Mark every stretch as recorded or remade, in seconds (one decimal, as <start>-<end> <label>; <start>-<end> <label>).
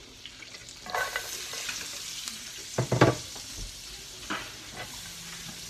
0.0-5.7 recorded